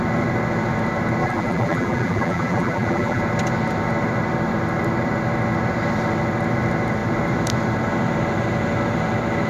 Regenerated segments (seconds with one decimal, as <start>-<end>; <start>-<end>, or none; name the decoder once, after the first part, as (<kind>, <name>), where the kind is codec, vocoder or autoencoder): 1.2-3.2 (vocoder, BigVGAN v2)